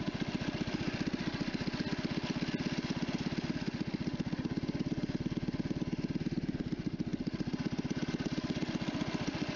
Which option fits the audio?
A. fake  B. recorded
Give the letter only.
B